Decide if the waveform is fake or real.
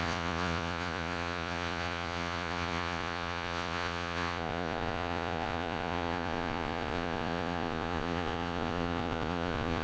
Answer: fake